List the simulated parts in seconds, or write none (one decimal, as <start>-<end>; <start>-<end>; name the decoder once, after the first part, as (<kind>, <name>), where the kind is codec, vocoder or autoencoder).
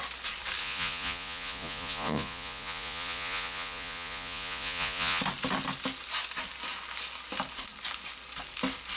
0.6-5.2 (vocoder, Vocos)